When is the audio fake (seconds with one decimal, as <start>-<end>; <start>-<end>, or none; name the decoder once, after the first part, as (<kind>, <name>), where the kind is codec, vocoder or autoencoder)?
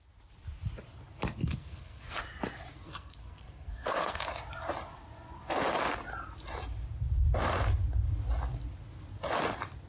1.4-2.2 (codec, SNAC); 2.7-4.2